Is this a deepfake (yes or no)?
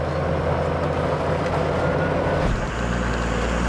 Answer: no